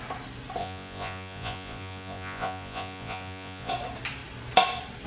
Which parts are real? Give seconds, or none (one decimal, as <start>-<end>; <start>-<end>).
0.0-0.6; 3.7-5.1